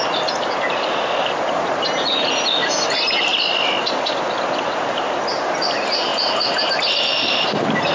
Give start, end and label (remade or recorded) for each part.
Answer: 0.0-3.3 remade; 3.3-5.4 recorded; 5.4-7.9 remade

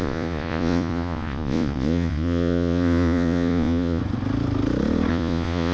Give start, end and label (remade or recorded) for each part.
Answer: 0.0-4.0 remade; 4.0-5.1 recorded; 5.1-5.7 remade

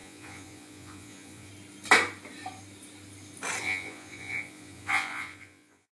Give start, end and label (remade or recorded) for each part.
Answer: 0.0-1.5 remade; 1.5-3.6 recorded; 3.6-5.9 remade

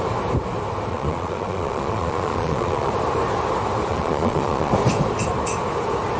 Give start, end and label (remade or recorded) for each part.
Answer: 0.0-0.9 recorded; 0.9-2.9 remade; 2.9-3.9 recorded; 3.9-4.7 remade; 4.7-6.2 recorded

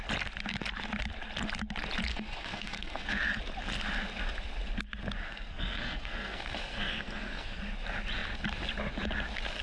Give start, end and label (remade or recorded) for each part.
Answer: 0.0-2.1 recorded; 2.1-3.4 remade; 3.4-5.2 recorded; 5.2-7.6 remade; 7.6-9.6 recorded

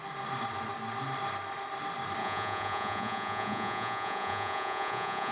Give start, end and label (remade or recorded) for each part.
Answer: 0.0-2.2 recorded; 2.2-5.3 remade

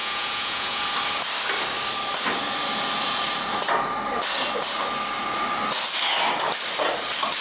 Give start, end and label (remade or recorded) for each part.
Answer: 0.0-0.8 remade; 0.8-7.4 recorded